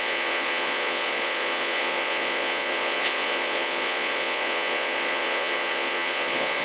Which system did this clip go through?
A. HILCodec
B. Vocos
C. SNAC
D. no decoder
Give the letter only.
B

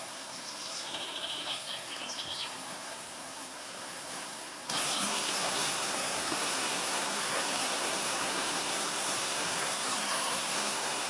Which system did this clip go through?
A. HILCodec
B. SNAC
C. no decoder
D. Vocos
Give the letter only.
B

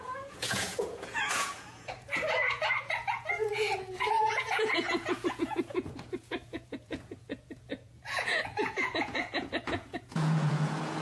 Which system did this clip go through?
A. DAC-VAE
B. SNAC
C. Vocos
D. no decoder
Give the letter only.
C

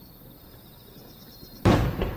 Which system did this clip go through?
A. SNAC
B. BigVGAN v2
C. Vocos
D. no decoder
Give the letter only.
B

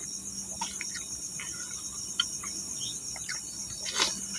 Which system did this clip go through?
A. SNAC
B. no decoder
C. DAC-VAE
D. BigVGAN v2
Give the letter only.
B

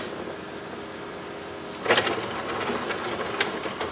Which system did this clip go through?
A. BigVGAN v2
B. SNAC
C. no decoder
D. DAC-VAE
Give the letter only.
C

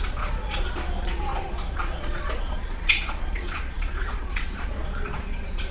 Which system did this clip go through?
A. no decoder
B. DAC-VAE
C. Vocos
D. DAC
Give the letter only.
C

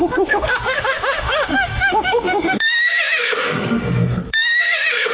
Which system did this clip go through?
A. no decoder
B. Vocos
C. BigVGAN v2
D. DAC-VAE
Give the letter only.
D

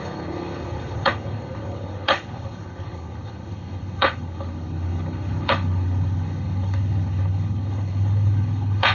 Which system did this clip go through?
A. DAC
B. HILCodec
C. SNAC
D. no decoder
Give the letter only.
B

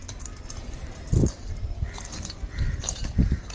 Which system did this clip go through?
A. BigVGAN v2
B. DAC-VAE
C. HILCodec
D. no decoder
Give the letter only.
D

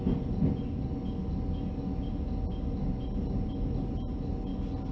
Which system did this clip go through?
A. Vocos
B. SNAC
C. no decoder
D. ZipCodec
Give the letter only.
C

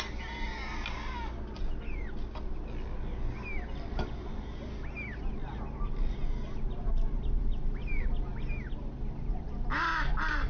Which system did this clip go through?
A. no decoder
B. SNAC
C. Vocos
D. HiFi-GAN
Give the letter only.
A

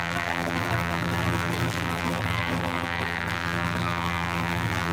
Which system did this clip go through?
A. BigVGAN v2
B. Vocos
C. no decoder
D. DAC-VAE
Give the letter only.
A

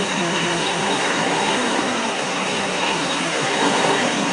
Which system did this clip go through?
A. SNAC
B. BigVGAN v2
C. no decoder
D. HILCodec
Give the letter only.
A